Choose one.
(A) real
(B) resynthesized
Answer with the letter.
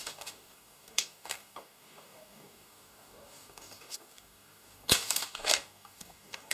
B